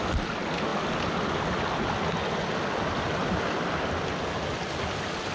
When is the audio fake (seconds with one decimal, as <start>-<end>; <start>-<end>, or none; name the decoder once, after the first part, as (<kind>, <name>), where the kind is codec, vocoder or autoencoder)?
none

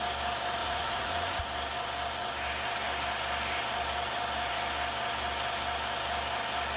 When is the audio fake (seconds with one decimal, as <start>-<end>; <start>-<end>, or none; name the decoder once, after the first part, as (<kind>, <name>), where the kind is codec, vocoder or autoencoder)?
0.6-1.4 (vocoder, Vocos)

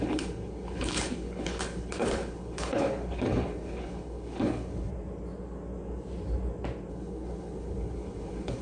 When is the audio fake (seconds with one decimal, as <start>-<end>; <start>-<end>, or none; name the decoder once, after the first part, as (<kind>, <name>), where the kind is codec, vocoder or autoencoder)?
0.0-4.9 (codec, HILCodec); 6.9-8.6

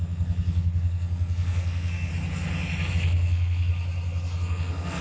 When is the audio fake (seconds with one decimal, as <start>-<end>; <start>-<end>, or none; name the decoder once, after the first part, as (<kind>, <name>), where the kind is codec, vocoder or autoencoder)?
0.0-2.1 (codec, SNAC); 2.9-3.7; 4.4-5.0

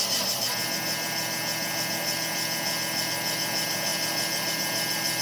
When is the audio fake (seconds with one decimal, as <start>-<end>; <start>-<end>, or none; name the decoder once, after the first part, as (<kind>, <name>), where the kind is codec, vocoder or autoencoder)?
none